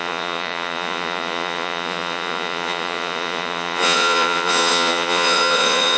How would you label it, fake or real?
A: fake